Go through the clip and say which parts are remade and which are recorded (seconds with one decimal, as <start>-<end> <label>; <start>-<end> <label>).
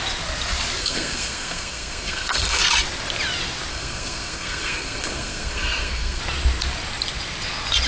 0.0-0.8 recorded; 0.8-2.6 remade; 2.6-3.7 recorded; 3.7-6.2 remade; 6.2-7.9 recorded